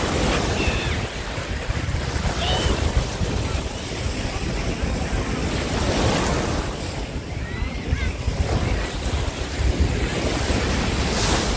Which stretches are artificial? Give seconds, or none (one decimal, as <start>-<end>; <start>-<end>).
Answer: none